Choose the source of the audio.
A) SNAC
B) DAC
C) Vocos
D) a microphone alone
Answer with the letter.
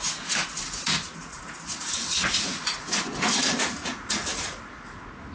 C